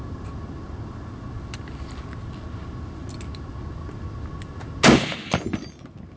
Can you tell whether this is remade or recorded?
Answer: recorded